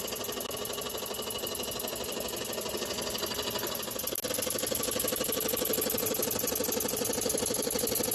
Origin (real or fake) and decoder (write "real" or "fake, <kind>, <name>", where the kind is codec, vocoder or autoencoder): real